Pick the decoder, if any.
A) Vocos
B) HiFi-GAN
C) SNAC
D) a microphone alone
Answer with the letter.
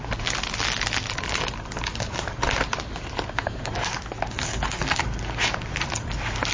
D